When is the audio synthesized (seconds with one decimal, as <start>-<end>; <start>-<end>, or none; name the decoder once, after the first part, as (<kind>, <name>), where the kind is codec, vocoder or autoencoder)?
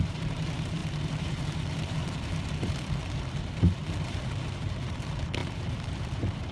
0.0-6.5 (vocoder, BigVGAN v2)